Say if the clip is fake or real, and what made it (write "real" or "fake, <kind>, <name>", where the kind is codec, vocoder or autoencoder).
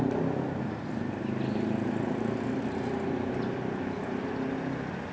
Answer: real